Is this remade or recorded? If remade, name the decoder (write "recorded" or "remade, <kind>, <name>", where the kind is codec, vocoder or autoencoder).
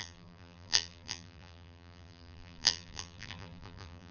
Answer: remade, vocoder, BigVGAN v2